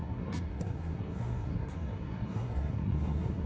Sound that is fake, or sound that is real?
fake